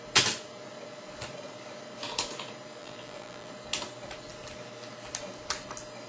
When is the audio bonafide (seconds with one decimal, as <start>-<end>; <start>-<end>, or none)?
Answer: 0.0-2.8; 3.5-6.1